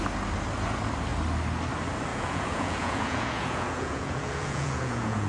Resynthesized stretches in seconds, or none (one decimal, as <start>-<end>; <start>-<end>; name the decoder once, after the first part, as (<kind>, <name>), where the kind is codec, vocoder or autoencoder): 2.1-5.3 (vocoder, Vocos)